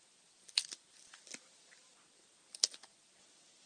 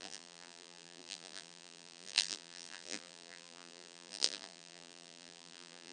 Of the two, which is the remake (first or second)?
second